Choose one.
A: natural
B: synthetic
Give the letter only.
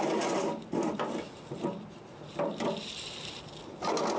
A